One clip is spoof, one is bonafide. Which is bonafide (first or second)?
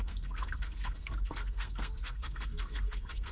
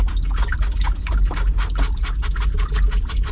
second